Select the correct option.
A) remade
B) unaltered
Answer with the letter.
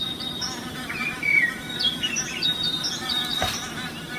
B